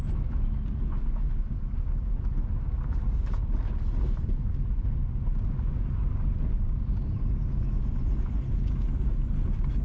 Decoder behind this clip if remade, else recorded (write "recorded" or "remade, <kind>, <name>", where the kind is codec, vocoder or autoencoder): recorded